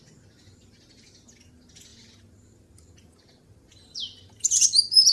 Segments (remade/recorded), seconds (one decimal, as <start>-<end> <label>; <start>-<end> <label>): 0.0-5.1 recorded